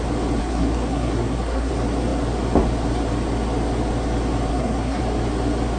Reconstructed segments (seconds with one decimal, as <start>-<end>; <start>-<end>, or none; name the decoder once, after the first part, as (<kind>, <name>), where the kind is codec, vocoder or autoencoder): 0.4-1.7 (codec, SNAC); 4.5-5.0